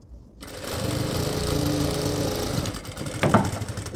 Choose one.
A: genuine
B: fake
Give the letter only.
A